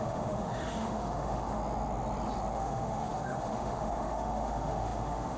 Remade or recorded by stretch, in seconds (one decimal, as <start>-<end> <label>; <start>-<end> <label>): 0.0-1.6 remade; 1.6-2.5 recorded; 2.5-5.4 remade